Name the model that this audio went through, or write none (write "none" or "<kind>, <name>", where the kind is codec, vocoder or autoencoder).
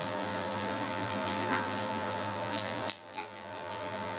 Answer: vocoder, BigVGAN v2